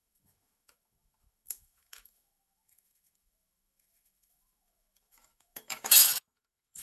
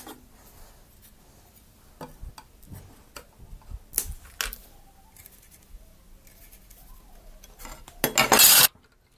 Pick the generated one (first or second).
first